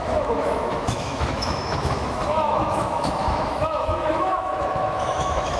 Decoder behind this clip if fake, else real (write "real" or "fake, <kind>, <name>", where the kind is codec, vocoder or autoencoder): fake, autoencoder, DAC-VAE